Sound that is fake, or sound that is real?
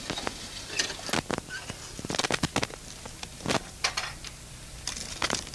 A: real